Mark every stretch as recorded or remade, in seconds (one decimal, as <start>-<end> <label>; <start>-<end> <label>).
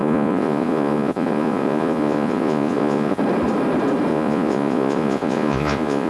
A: 0.0-3.2 remade; 3.2-4.1 recorded; 4.1-6.1 remade